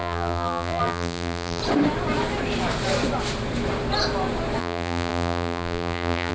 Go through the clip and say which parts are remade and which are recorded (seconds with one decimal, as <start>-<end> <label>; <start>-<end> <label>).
0.0-1.6 remade; 1.6-4.6 recorded; 4.6-6.3 remade